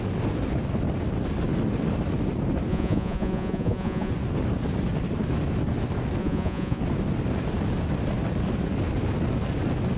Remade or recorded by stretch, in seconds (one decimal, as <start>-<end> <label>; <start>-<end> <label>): 0.0-2.7 recorded; 2.7-4.1 remade; 4.1-6.2 recorded; 6.2-6.8 remade; 6.8-10.0 recorded